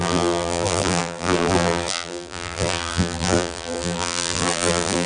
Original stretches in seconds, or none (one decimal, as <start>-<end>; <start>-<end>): none